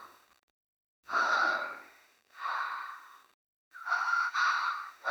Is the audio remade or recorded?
remade